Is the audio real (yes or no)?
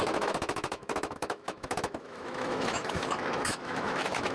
no